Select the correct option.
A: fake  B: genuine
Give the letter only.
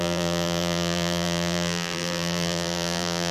A